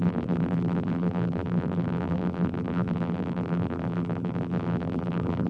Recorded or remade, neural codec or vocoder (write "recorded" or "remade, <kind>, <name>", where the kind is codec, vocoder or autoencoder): remade, vocoder, BigVGAN v2